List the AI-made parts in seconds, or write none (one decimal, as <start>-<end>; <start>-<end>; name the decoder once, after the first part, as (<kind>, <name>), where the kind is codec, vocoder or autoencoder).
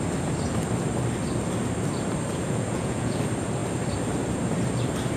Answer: 2.3-3.2 (vocoder, Vocos)